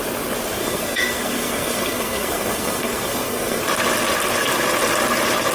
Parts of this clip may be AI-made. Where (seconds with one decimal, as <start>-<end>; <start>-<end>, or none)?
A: 0.6-3.6